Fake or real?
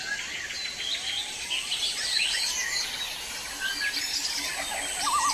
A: real